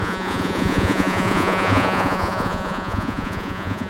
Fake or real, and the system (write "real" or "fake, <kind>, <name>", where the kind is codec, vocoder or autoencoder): fake, vocoder, Vocos